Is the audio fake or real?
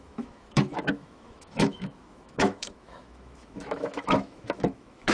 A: fake